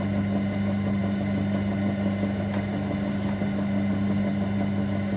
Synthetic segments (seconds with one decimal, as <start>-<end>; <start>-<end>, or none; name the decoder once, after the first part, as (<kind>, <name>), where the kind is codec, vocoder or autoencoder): none